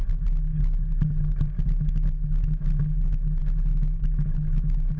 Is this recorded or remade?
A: recorded